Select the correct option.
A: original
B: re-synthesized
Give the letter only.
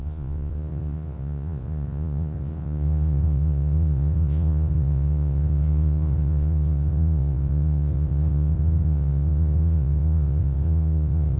B